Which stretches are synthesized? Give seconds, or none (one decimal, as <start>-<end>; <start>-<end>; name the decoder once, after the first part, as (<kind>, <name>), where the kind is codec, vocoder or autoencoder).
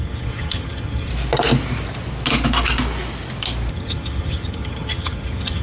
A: 0.0-1.1 (vocoder, HiFi-GAN); 3.7-5.6